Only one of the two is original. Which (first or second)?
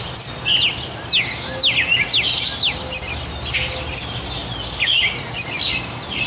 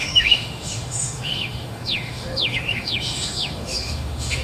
first